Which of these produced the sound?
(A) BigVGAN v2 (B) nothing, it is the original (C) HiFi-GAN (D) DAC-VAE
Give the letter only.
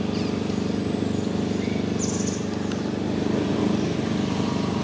B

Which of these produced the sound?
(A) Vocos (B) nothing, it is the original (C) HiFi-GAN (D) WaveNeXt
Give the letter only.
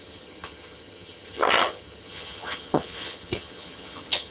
C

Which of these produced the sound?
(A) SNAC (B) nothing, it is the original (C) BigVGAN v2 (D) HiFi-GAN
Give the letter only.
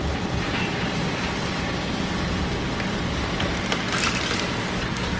B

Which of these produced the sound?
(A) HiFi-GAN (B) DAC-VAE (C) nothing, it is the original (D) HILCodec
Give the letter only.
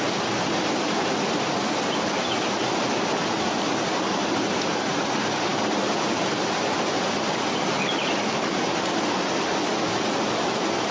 C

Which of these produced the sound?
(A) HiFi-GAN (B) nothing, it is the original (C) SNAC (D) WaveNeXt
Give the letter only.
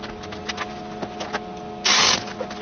B